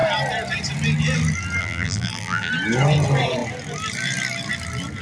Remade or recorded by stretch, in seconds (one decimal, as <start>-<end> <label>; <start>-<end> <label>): 0.0-1.6 recorded; 1.6-2.5 remade; 2.5-5.0 recorded